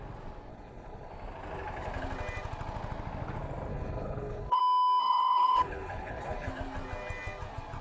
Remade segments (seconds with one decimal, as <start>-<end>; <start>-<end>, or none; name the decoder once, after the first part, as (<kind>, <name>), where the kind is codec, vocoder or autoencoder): 0.5-1.1 (codec, HILCodec); 3.7-4.6; 5.0-6.5